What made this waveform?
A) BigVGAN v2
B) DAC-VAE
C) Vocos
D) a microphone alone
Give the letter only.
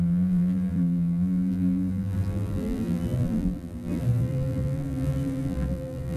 A